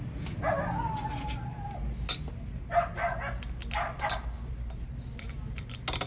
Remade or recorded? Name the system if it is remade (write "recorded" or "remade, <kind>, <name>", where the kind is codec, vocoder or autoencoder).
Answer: recorded